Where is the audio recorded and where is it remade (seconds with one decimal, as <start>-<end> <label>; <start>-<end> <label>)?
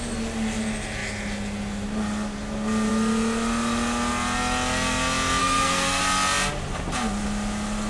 0.0-5.4 recorded; 5.4-6.0 remade; 6.0-7.9 recorded